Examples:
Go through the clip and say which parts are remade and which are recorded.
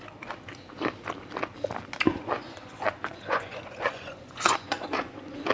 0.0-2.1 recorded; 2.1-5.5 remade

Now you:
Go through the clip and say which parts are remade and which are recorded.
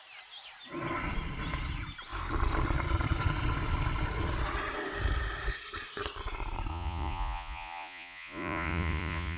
0.0-6.7 recorded; 6.7-9.4 remade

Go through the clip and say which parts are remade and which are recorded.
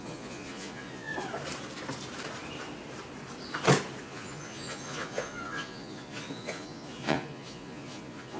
0.0-1.1 remade; 1.1-4.0 recorded; 4.0-8.4 remade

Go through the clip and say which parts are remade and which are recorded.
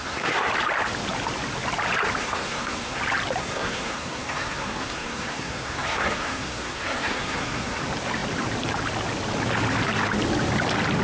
0.0-0.5 remade; 0.5-2.2 recorded; 2.2-3.0 remade; 3.0-3.4 recorded; 3.4-7.8 remade; 7.8-11.0 recorded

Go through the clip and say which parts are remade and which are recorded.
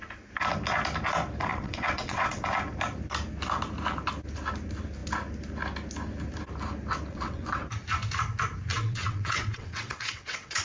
0.0-1.5 recorded; 1.5-2.4 remade; 2.4-7.1 recorded; 7.1-7.7 remade; 7.7-8.7 recorded; 8.7-10.6 remade